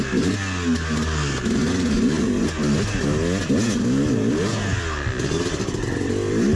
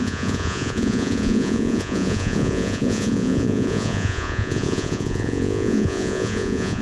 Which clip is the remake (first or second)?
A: second